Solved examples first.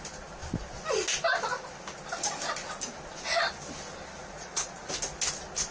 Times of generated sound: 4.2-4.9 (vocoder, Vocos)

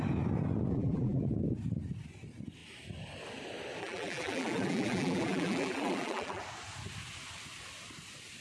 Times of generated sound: 0.7-1.2 (vocoder, BigVGAN v2); 3.8-6.4

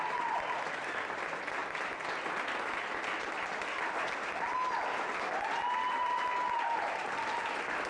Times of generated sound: none